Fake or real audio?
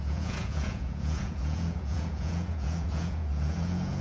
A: fake